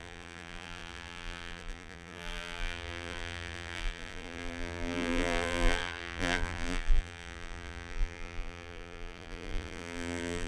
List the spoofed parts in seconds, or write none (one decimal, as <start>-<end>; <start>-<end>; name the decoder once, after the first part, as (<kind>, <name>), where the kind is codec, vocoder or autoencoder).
0.0-10.5 (vocoder, BigVGAN v2)